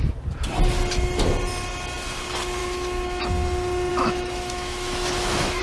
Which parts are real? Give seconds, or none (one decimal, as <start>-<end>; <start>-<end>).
0.0-2.6; 3.2-3.9